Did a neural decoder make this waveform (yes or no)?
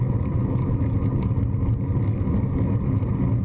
no